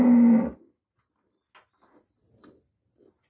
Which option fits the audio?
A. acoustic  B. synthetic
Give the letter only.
A